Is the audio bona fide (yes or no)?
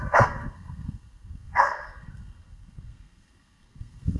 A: no